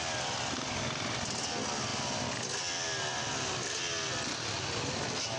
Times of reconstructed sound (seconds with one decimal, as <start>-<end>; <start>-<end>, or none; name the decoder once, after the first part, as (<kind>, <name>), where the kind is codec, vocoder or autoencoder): none

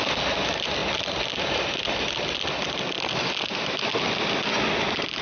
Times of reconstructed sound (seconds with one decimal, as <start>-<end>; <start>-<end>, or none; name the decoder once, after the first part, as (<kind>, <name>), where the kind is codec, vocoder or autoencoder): 0.8-3.9 (vocoder, BigVGAN v2)

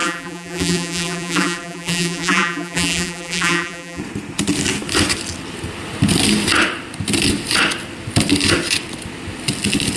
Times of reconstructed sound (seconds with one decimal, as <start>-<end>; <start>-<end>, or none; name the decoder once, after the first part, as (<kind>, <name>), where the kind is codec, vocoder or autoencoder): 0.0-4.0 (vocoder, BigVGAN v2)